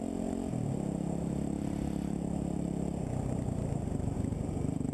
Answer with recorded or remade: recorded